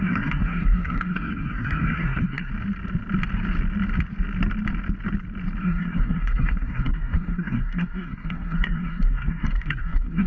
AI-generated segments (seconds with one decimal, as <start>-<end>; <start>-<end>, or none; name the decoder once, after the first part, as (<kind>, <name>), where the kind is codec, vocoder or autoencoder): 0.0-2.5 (codec, SNAC); 5.6-10.3